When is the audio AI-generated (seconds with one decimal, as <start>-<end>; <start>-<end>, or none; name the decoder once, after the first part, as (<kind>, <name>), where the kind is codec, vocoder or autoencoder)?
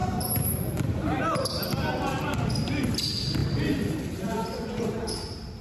3.4-4.8 (vocoder, BigVGAN v2)